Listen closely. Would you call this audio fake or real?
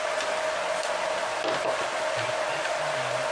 real